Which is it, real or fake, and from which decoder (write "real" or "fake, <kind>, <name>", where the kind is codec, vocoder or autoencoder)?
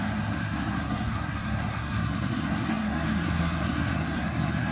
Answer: fake, codec, SNAC